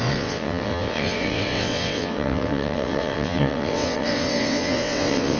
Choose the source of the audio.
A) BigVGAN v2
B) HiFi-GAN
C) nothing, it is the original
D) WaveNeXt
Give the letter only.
D